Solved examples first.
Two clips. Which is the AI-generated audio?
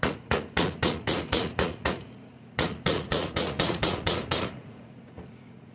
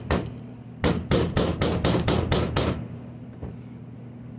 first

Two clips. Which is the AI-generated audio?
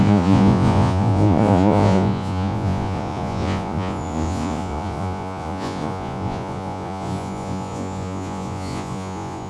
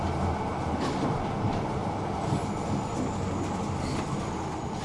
first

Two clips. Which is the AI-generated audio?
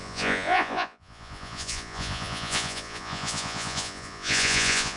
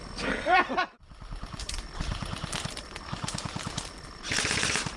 first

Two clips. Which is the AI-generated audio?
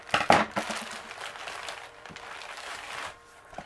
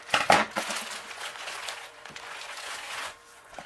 second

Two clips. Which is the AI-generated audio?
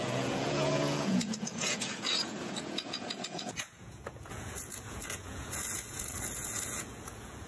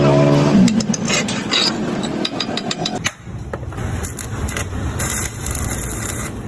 first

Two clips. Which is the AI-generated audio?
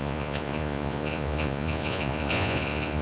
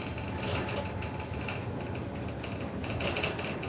first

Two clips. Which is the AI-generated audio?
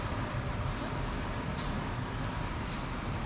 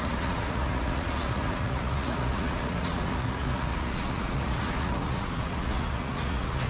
second